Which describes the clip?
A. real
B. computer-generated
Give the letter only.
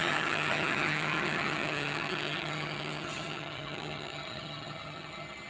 B